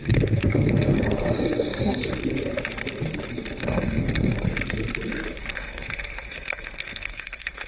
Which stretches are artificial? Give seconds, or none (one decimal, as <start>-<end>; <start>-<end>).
0.0-2.0; 3.3-4.5; 5.5-7.7